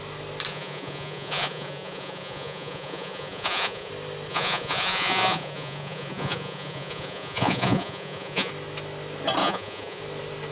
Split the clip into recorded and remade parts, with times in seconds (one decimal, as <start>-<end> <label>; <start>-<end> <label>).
0.0-0.5 recorded; 0.5-3.9 remade; 3.9-4.3 recorded; 4.3-8.5 remade; 8.5-9.4 recorded; 9.4-10.0 remade; 10.0-10.5 recorded